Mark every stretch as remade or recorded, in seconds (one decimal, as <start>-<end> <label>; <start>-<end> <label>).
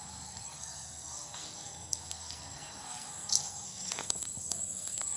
0.0-5.2 remade